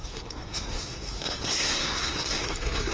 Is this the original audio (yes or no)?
no